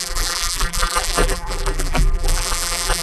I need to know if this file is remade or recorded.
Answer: remade